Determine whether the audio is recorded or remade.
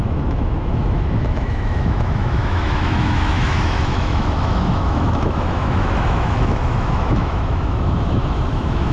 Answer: remade